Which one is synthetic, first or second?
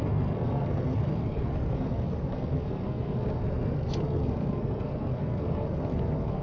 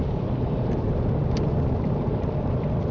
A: first